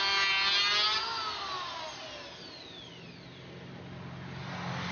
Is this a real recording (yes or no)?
yes